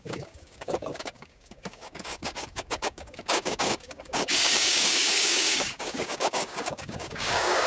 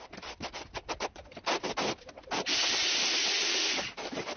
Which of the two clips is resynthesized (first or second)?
first